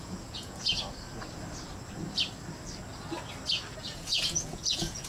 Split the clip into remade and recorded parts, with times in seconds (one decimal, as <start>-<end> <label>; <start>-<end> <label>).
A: 0.0-0.7 remade; 0.7-3.8 recorded; 3.8-5.1 remade